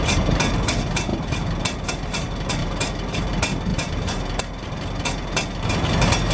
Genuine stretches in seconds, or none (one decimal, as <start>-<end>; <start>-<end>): 0.0-2.6; 3.3-3.7; 4.4-6.3